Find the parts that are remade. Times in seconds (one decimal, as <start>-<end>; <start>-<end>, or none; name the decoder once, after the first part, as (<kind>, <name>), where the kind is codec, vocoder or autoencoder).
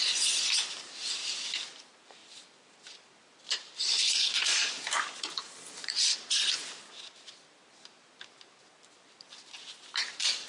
2.2-6.8 (vocoder, BigVGAN v2)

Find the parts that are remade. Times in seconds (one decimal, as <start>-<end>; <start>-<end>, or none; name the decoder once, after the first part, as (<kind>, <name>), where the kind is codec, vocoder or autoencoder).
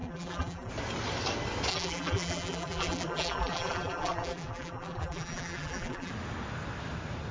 0.0-0.7 (vocoder, BigVGAN v2); 1.7-6.1